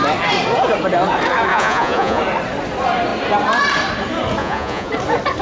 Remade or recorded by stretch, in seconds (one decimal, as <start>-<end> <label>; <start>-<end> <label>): 0.0-1.5 recorded; 1.5-2.2 remade; 2.2-4.4 recorded; 4.4-4.9 remade; 4.9-5.4 recorded

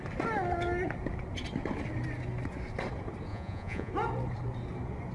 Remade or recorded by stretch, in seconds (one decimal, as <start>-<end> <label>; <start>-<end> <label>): 0.0-3.3 recorded; 3.3-3.9 remade; 3.9-5.1 recorded

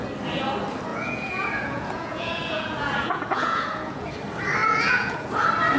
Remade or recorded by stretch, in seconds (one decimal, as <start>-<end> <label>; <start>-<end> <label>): 0.0-0.9 recorded; 0.9-4.1 remade; 4.1-4.6 recorded; 4.6-5.3 remade; 5.3-5.8 recorded

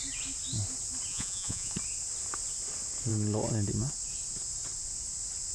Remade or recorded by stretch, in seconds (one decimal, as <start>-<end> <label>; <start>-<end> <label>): 0.0-1.1 recorded; 1.1-1.7 remade; 1.7-5.5 recorded

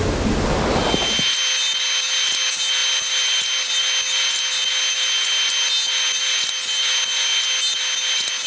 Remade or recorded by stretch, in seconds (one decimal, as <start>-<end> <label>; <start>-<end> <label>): 0.0-8.5 recorded